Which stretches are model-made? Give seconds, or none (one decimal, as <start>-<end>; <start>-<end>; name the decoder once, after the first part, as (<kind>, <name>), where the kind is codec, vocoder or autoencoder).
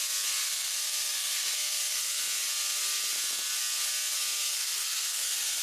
0.4-2.2 (codec, SNAC); 4.4-5.6